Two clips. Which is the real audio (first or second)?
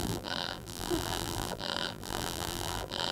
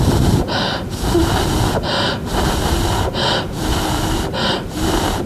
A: second